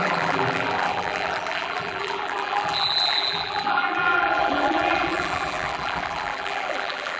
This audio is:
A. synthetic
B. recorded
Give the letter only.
A